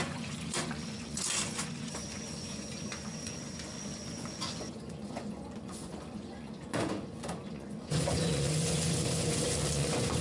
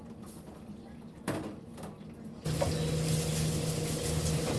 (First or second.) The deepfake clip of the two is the first